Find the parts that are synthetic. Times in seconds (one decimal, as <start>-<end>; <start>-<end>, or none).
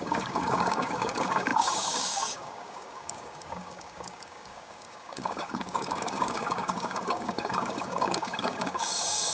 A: 0.0-9.3